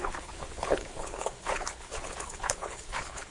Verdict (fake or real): fake